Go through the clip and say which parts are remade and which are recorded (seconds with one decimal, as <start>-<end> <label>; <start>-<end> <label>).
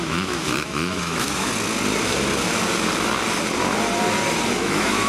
0.0-1.5 remade; 1.5-4.6 recorded; 4.6-5.1 remade